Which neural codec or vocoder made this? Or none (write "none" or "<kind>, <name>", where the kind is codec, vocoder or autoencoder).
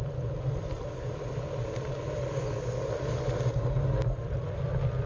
none